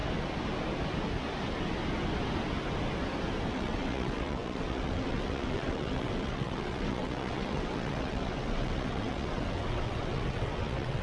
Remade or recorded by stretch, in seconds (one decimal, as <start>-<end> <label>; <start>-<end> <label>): 0.0-3.5 recorded; 3.5-11.0 remade